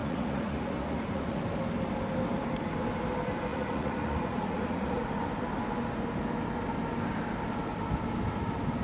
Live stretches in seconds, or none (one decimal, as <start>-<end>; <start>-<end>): 1.4-3.5; 5.2-8.8